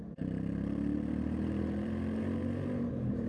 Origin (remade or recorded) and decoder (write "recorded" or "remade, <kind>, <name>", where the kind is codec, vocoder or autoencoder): remade, vocoder, BigVGAN v2